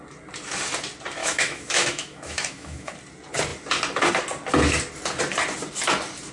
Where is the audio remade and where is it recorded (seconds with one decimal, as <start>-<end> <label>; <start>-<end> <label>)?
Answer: 0.0-1.2 recorded; 1.2-2.9 remade; 2.9-6.3 recorded